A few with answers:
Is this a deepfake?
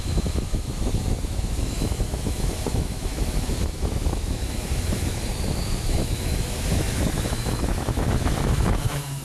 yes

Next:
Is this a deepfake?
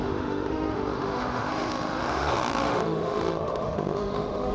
yes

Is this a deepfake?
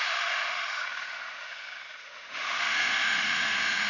yes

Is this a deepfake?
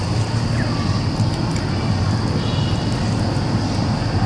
no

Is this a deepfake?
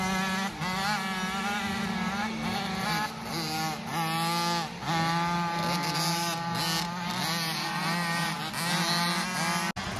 no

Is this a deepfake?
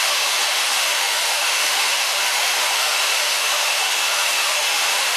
yes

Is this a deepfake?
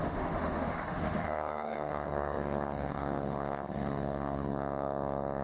yes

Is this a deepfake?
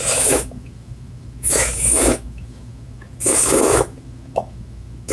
yes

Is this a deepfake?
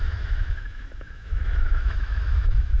yes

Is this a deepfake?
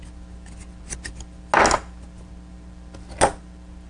no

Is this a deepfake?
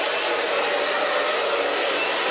no